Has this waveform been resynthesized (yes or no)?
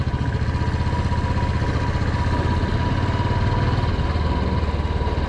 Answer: no